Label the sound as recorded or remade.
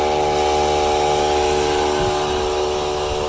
recorded